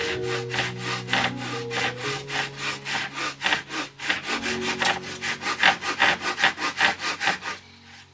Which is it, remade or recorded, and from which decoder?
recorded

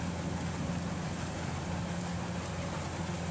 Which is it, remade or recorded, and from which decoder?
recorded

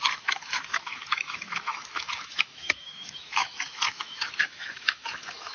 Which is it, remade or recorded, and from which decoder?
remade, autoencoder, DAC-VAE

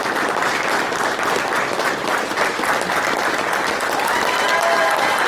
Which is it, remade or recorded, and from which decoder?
recorded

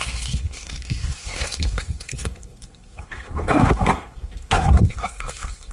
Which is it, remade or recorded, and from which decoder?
remade, codec, SNAC